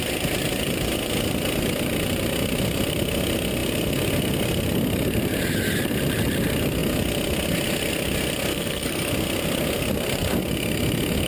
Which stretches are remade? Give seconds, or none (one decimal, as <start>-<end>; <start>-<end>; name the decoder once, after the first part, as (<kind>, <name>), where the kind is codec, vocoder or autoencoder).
8.5-9.1 (codec, SNAC)